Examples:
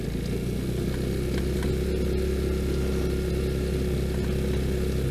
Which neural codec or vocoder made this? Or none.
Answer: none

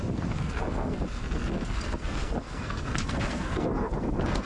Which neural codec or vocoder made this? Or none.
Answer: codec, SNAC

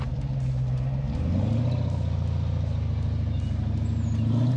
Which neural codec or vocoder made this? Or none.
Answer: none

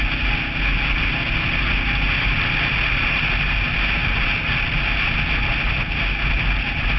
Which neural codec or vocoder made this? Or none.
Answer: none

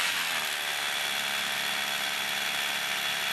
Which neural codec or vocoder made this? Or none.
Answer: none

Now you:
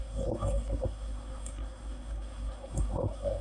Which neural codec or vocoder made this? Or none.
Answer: codec, SNAC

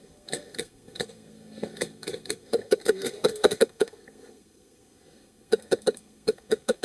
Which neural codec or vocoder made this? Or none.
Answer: codec, SNAC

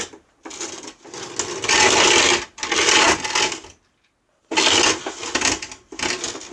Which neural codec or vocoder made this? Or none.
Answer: none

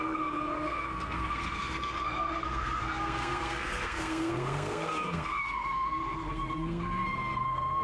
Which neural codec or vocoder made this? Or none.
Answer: codec, SNAC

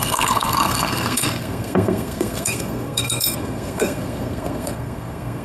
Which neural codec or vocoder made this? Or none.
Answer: codec, SNAC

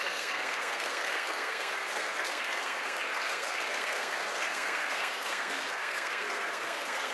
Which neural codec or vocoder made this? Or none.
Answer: codec, SNAC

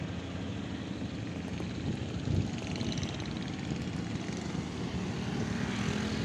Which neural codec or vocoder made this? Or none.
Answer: none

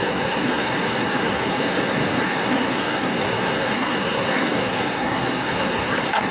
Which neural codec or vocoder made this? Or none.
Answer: codec, SNAC